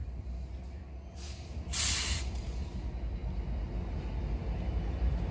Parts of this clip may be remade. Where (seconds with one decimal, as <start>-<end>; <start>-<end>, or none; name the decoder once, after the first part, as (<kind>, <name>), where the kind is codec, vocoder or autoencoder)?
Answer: none